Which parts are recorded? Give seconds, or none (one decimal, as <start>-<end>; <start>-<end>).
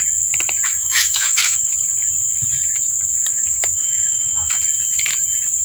0.0-0.7; 1.7-3.3; 4.6-5.6